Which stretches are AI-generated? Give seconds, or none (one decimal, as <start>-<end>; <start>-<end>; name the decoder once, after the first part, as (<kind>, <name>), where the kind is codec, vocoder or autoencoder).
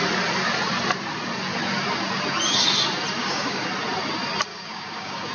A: 3.2-3.7 (codec, DAC); 4.5-5.3